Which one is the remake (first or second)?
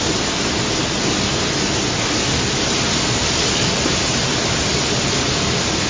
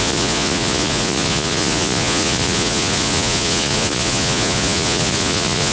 second